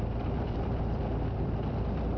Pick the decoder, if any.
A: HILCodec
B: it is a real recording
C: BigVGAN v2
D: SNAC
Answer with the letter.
C